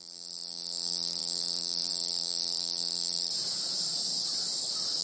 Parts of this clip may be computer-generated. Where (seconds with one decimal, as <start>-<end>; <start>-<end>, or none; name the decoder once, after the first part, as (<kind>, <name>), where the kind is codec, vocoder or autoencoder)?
0.0-3.3 (vocoder, BigVGAN v2)